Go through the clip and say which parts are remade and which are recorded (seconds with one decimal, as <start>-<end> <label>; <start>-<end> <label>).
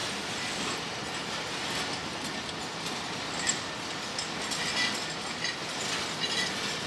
0.0-6.9 recorded